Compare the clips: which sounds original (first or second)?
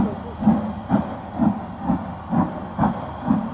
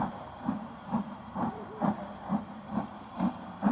first